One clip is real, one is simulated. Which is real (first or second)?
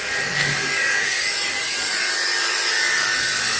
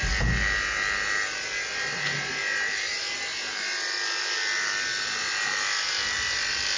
second